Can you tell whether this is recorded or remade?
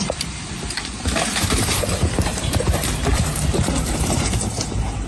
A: remade